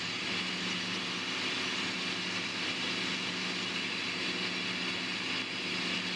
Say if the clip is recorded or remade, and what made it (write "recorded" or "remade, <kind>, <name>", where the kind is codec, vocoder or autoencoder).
recorded